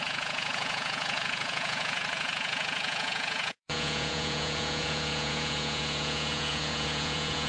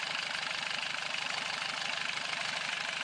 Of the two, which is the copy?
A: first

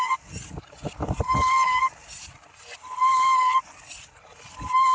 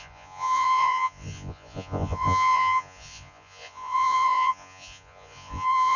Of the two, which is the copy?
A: second